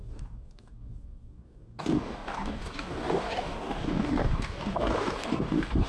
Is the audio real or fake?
fake